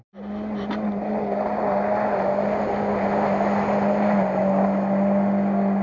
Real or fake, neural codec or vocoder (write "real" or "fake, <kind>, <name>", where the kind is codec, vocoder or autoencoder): real